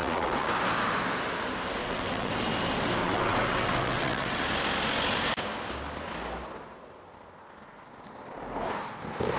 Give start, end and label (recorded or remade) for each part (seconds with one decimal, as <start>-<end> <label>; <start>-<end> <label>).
0.0-0.5 remade; 0.5-1.8 recorded; 1.8-2.3 remade; 2.3-3.0 recorded; 3.0-4.4 remade; 4.4-9.4 recorded